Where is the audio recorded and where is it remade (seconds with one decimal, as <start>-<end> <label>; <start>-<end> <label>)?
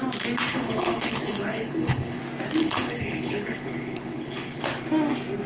0.0-0.5 recorded; 0.5-2.2 remade; 2.2-2.6 recorded; 2.6-4.6 remade; 4.6-5.5 recorded